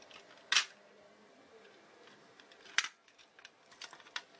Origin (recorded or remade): recorded